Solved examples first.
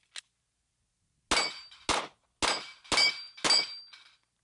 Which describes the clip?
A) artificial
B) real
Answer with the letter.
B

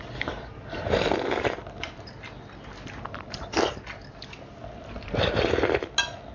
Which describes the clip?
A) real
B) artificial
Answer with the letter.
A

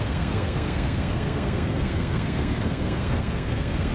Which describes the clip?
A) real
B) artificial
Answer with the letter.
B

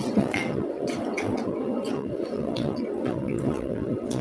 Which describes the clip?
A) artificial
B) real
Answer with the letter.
A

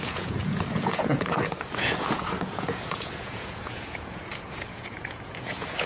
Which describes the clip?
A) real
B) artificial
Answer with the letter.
B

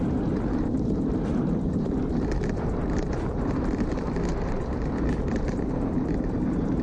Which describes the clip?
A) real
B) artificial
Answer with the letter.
B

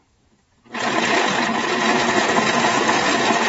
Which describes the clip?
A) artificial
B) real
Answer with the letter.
A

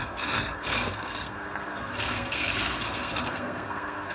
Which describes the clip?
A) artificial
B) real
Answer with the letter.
A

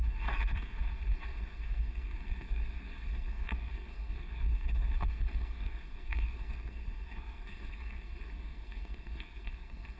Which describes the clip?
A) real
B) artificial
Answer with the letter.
B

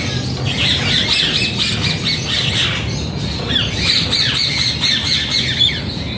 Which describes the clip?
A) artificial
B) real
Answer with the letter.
B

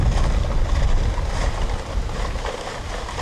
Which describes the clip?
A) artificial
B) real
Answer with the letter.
B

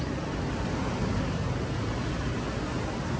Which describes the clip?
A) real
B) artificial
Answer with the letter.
A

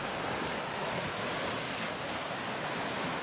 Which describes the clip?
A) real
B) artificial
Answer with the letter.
A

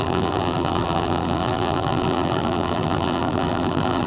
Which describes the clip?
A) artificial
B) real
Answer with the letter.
A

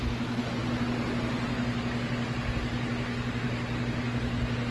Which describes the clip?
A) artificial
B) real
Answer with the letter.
B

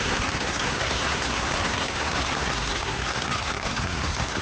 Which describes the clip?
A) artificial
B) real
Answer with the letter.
A